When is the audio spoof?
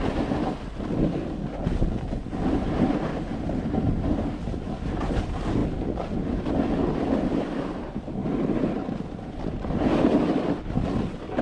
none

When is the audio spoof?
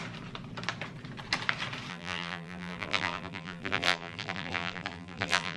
1.9-5.6 (vocoder, BigVGAN v2)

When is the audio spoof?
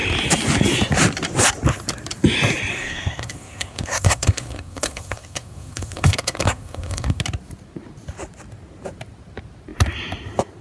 2.7-7.2 (codec, SNAC)